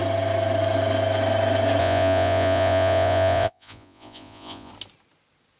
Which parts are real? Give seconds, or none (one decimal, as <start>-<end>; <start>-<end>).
0.0-1.8; 4.7-5.6